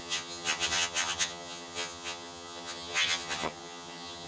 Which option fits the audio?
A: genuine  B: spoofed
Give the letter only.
B